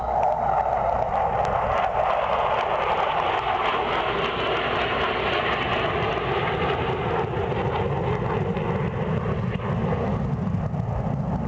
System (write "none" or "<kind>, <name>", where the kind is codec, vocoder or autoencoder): none